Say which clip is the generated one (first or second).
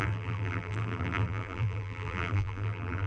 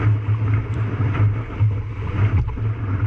first